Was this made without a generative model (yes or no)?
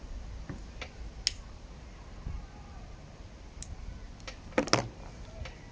yes